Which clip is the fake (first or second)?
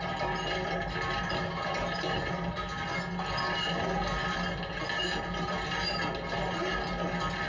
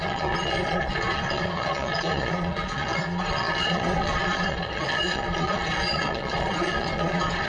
second